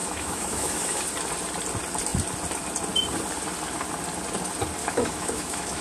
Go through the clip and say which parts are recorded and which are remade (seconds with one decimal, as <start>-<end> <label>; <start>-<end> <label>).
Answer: 0.0-1.0 remade; 1.0-4.8 recorded; 4.8-5.8 remade